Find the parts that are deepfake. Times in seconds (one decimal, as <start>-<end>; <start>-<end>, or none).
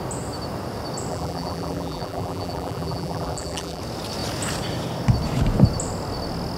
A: 1.1-3.8